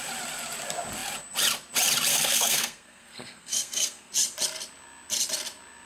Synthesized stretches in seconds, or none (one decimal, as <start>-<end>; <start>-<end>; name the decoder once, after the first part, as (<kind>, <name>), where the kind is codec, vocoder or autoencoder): 2.1-4.1 (codec, SNAC)